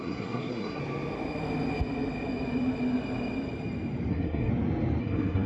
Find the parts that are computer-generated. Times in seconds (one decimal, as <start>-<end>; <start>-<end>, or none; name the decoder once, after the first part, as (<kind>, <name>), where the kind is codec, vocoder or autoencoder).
0.0-0.8 (codec, SNAC); 4.1-4.5; 5.0-5.5